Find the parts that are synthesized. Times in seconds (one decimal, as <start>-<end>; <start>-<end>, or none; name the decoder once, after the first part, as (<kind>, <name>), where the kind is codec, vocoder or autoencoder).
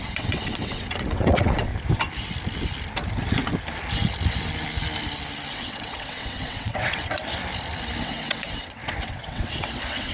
0.0-1.7 (vocoder, WaveNeXt); 5.5-7.4; 8.0-10.1